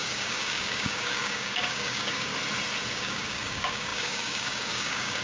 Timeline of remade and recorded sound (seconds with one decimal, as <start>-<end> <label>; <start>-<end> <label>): 0.0-2.3 remade; 2.3-2.9 recorded; 2.9-5.2 remade